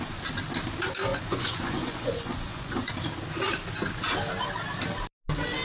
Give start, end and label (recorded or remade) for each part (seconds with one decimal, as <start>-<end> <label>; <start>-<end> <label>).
0.0-1.1 recorded; 1.1-2.9 remade; 2.9-5.6 recorded